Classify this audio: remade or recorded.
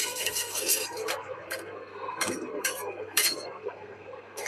remade